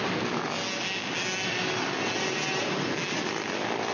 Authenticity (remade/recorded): recorded